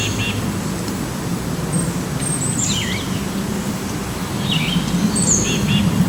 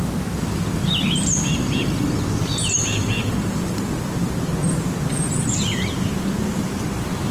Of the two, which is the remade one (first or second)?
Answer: second